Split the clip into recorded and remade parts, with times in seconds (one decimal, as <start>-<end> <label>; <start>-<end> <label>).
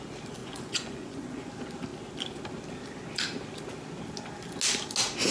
0.0-0.4 recorded; 0.4-1.5 remade; 1.5-5.3 recorded